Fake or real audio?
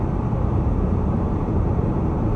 fake